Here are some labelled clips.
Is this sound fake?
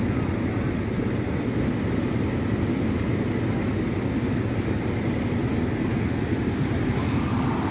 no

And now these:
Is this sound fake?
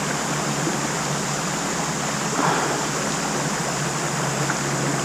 no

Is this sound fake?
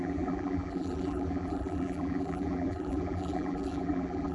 yes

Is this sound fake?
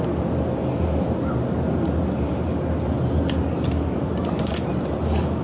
no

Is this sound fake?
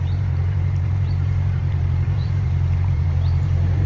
yes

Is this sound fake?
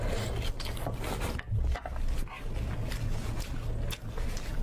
no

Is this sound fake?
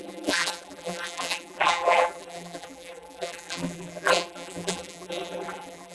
yes